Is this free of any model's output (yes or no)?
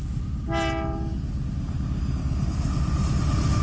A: yes